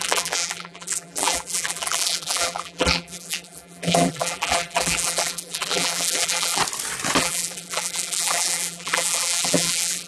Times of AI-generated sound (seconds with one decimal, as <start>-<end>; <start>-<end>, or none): 0.0-6.6; 7.2-10.1